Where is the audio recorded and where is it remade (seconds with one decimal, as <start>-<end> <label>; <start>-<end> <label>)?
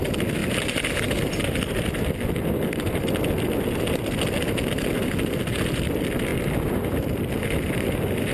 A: 0.0-8.3 recorded